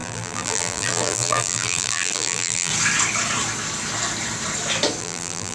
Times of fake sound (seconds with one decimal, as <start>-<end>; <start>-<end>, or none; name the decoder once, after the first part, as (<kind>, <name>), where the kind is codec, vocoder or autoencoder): 0.0-2.7 (vocoder, BigVGAN v2); 5.0-5.5

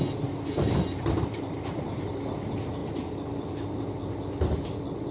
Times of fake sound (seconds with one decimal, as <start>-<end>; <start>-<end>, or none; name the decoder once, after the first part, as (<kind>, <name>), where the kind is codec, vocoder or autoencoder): 0.5-2.1 (vocoder, BigVGAN v2); 2.8-3.7

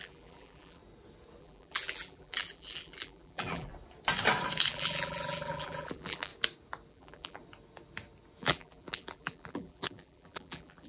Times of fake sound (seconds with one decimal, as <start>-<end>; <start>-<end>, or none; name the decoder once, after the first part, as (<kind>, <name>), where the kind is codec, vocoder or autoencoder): 0.0-0.8 (vocoder, BigVGAN v2); 1.4-3.7; 4.7-6.3; 6.9-7.4; 8.4-10.9

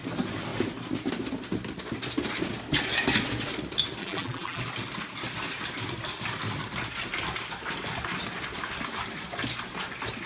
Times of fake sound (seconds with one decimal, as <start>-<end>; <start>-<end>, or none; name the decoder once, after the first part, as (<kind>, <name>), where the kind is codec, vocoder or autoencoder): 4.0-4.6 (vocoder, BigVGAN v2)

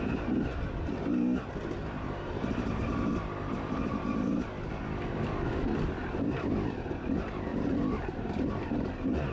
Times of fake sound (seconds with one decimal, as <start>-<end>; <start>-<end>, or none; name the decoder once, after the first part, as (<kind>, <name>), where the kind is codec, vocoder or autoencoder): 1.8-3.1 (vocoder, BigVGAN v2); 7.5-9.3

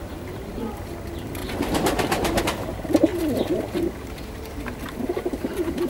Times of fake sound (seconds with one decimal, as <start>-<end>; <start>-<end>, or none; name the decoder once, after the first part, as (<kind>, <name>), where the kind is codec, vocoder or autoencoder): 0.0-5.9 (vocoder, BigVGAN v2)